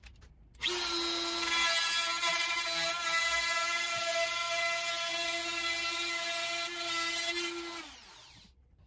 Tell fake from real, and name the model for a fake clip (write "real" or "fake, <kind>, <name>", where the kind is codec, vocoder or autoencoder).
real